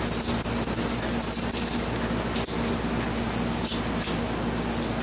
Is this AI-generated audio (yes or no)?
no